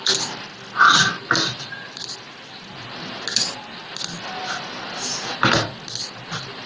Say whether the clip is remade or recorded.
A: recorded